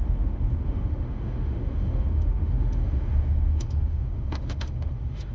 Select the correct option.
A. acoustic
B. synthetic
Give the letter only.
B